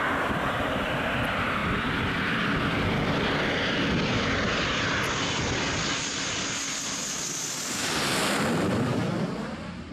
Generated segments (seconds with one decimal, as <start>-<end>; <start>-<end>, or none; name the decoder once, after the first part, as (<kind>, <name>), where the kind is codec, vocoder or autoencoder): none